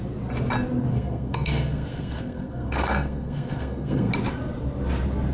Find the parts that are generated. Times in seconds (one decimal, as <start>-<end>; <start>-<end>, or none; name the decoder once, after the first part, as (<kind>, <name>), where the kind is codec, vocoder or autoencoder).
0.9-4.1 (codec, SNAC)